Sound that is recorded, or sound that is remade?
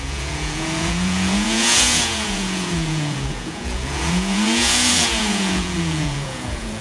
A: remade